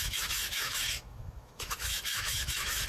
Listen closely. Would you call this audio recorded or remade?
remade